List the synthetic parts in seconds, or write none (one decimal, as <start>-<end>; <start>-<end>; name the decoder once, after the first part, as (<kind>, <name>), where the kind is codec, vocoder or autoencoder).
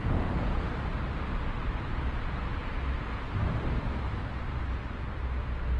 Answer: 0.0-0.7 (vocoder, Vocos)